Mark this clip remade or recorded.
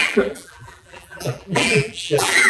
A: remade